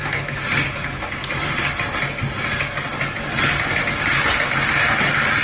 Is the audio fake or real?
real